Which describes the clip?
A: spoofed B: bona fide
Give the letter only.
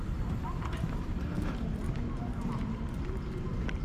B